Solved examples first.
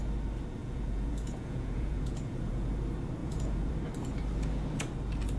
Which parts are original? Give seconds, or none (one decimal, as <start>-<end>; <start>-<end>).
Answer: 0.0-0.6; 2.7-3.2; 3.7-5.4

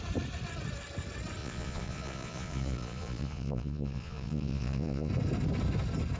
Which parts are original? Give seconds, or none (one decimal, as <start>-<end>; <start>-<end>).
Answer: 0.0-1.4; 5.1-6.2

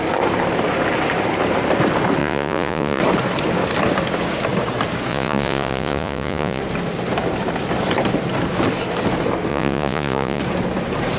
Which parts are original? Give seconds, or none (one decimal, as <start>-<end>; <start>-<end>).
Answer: 0.0-2.2; 3.0-5.1; 6.6-9.5; 10.4-11.2